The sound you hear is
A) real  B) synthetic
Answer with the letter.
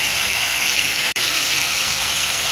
B